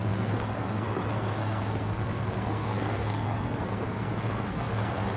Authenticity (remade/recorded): remade